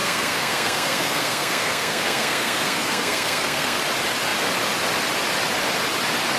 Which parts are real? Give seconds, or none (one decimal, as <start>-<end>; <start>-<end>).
3.8-6.4